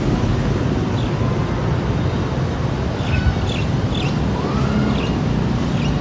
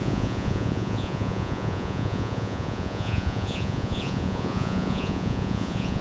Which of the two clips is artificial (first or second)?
second